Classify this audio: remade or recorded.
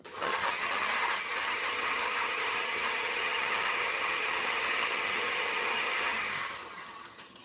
remade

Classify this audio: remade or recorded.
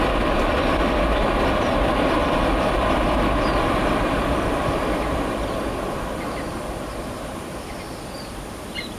remade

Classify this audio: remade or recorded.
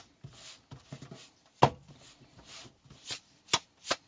recorded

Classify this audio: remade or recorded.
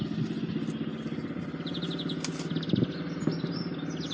recorded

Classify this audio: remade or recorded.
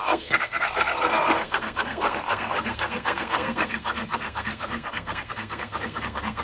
remade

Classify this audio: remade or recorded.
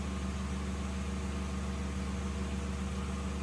recorded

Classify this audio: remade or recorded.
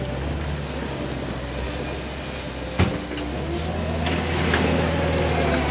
recorded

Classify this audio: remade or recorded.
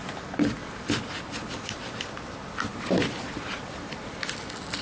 recorded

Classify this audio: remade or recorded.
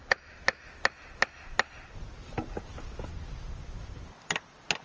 recorded